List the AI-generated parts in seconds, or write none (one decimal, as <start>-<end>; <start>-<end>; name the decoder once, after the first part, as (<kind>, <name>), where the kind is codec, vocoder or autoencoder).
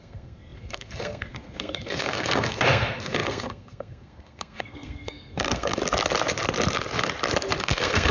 0.0-5.8 (codec, SNAC); 7.6-8.1